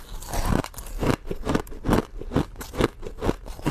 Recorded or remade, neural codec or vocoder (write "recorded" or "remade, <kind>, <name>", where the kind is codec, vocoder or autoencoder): recorded